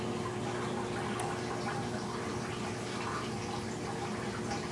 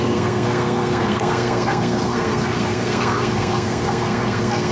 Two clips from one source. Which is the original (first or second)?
first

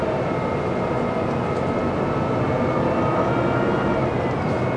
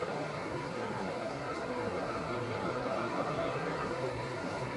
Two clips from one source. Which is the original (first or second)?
first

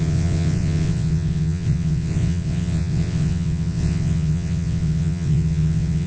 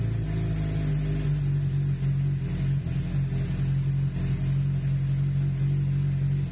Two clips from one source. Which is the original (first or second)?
second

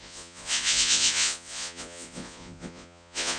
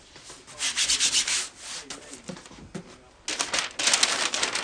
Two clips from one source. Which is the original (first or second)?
second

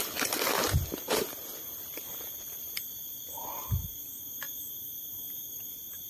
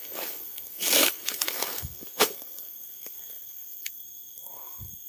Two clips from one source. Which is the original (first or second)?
first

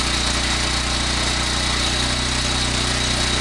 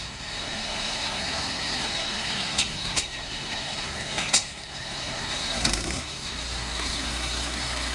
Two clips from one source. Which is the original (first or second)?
first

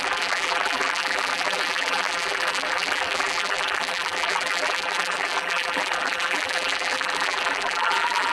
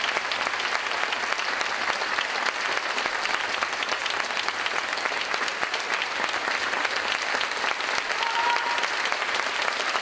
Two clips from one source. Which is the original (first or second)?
second